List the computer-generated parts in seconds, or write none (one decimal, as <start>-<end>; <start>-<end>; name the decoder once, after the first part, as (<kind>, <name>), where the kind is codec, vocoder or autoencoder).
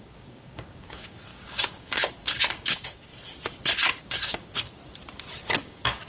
0.0-3.1 (codec, DAC); 4.0-4.8; 5.4-6.1